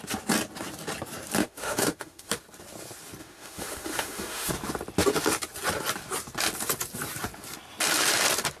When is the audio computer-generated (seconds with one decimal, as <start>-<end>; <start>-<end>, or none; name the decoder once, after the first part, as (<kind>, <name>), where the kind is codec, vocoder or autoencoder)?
1.4-2.3 (autoencoder, DAC-VAE); 3.2-4.5